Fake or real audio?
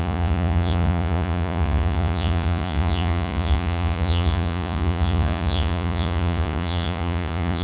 fake